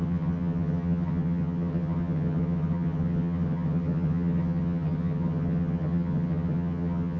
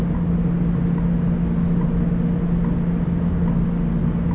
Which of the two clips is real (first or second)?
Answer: second